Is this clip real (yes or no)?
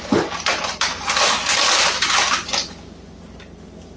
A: yes